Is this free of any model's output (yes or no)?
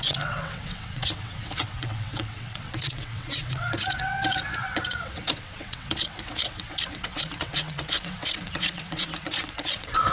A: no